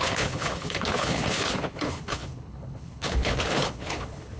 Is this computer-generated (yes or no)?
yes